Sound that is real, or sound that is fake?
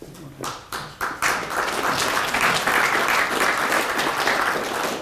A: real